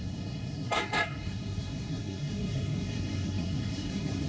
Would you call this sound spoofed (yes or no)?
yes